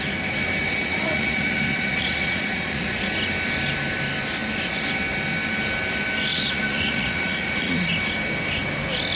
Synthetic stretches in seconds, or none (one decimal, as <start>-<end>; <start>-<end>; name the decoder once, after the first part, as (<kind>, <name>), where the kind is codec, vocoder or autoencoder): 0.8-3.0 (vocoder, Vocos); 6.3-7.9